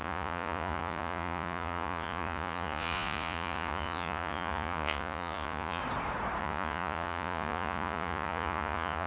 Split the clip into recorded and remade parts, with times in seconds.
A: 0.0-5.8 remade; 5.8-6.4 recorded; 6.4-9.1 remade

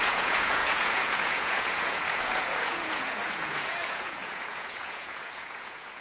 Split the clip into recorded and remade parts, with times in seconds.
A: 0.0-6.0 remade

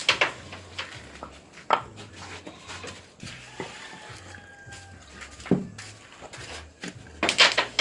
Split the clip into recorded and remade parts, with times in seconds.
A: 0.0-7.8 recorded

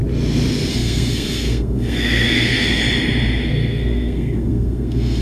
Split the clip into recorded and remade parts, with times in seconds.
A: 0.0-0.7 recorded; 0.7-2.8 remade; 2.8-3.5 recorded; 3.5-5.2 remade